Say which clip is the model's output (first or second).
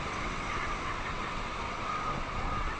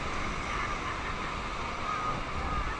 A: first